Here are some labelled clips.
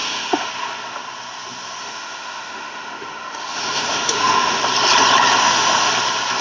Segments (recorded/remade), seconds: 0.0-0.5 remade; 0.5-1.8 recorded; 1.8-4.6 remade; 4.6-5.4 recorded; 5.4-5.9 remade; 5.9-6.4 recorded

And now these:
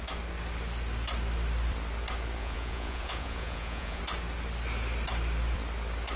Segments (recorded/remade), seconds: 0.0-2.4 recorded; 2.4-4.0 remade; 4.0-6.2 recorded

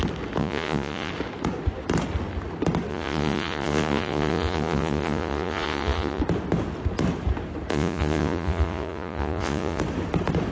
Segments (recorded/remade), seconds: 0.0-0.4 recorded; 0.4-1.1 remade; 1.1-2.9 recorded; 2.9-6.2 remade; 6.2-7.7 recorded; 7.7-9.8 remade; 9.8-10.5 recorded